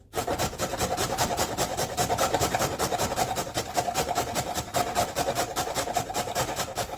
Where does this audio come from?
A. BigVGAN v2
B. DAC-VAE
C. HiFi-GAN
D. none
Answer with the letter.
A